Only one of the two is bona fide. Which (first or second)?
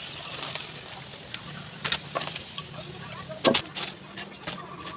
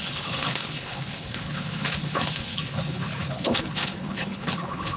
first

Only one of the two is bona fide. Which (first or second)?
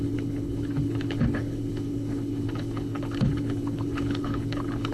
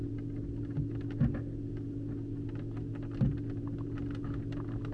second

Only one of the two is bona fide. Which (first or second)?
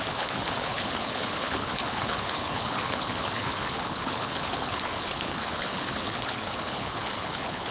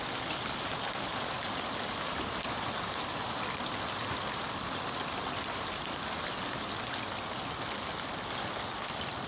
second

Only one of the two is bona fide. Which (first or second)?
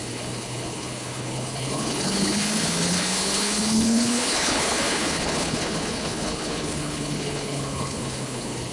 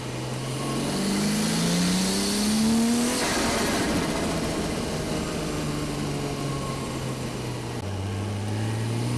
second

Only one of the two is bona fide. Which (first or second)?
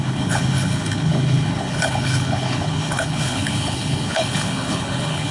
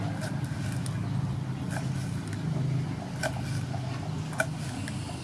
second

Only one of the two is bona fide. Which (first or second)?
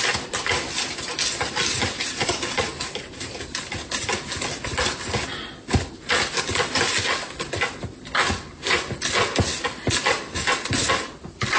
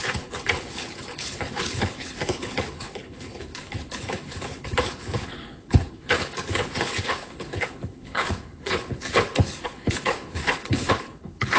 first